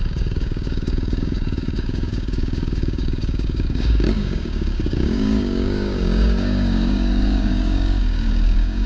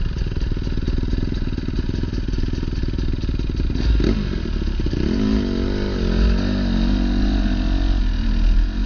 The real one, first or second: second